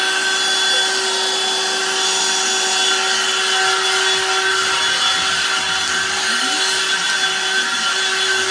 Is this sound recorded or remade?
recorded